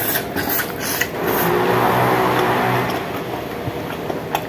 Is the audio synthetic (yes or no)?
no